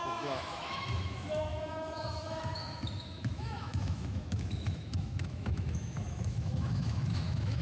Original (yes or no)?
no